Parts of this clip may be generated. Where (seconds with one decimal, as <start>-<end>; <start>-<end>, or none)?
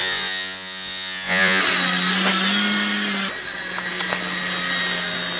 0.0-1.6